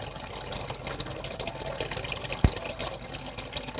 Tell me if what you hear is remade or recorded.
recorded